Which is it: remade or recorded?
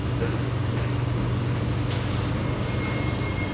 recorded